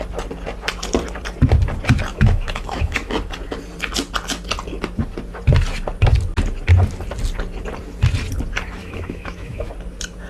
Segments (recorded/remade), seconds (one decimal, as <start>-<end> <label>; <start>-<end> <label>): 0.0-2.1 recorded; 2.1-3.1 remade; 3.1-8.8 recorded; 8.8-9.7 remade; 9.7-10.3 recorded